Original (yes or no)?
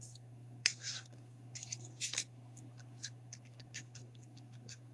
no